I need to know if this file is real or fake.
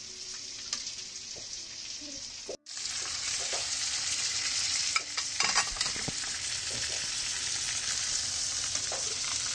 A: fake